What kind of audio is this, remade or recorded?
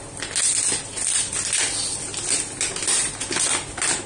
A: recorded